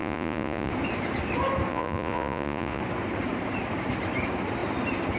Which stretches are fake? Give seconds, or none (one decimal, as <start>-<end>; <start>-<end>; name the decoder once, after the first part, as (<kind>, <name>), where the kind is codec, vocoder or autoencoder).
0.0-0.7 (vocoder, Vocos); 1.7-2.8

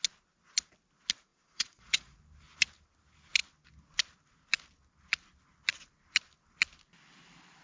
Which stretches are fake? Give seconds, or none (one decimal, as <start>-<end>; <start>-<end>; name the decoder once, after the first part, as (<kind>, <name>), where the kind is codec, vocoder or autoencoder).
1.3-2.2 (vocoder, Vocos)

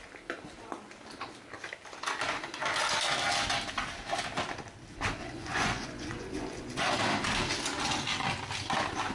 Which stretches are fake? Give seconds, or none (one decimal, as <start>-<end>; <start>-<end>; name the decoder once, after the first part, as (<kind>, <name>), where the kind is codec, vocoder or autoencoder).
5.2-7.0 (vocoder, Vocos)

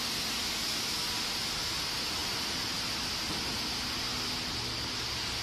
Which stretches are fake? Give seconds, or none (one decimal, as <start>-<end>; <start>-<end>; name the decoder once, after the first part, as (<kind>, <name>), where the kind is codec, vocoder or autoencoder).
none